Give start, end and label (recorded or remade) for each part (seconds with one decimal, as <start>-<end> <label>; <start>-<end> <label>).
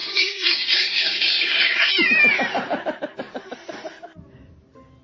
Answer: 0.0-1.9 remade; 1.9-5.0 recorded